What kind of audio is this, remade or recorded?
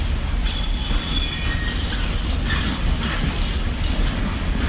recorded